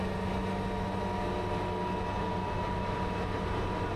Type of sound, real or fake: real